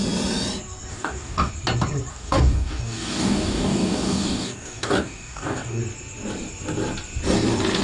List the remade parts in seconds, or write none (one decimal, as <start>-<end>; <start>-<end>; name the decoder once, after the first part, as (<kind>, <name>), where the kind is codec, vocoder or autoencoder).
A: 0.9-1.5 (codec, DAC); 2.1-5.8

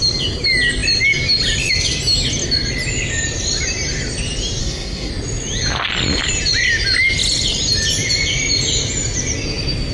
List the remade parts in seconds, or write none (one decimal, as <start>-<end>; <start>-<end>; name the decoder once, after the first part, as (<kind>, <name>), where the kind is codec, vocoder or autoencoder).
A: 4.6-5.1 (codec, SNAC)

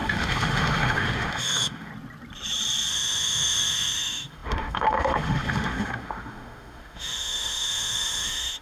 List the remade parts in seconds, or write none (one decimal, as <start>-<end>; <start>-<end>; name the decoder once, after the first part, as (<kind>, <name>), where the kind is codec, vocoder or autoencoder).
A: 0.0-1.9 (autoencoder, DAC-VAE); 2.9-8.6

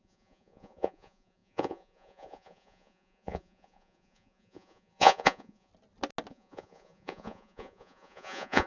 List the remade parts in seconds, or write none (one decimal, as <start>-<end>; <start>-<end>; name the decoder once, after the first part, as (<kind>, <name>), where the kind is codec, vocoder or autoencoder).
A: 0.0-5.7 (vocoder, Vocos); 6.3-8.7

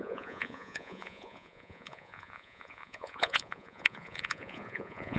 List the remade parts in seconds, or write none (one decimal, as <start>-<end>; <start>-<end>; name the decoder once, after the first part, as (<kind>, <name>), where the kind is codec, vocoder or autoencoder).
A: 0.0-5.2 (vocoder, Vocos)

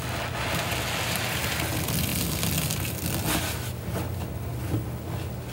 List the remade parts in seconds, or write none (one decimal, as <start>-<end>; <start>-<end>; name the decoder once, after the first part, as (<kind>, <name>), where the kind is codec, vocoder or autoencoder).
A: none

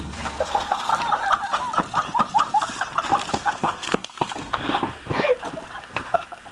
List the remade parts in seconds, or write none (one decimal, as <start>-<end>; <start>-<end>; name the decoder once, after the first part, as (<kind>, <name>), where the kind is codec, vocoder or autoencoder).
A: 0.0-0.9 (codec, SNAC); 3.3-5.3; 5.8-6.5